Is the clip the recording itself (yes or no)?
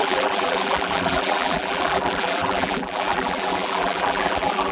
no